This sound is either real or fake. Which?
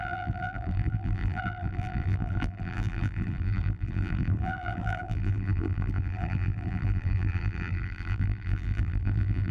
fake